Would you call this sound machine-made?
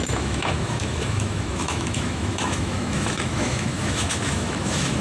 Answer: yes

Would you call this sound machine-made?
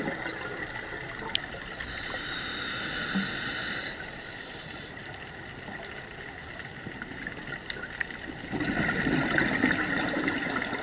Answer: no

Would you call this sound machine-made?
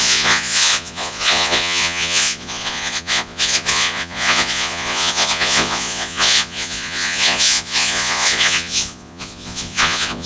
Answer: yes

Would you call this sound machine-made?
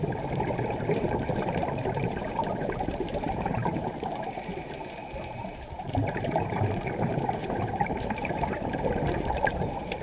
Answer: yes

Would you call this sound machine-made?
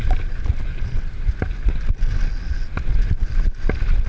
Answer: no